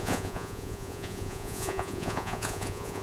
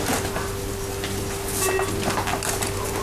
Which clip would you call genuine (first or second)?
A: second